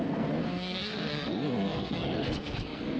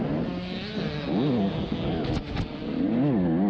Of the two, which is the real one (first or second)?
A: second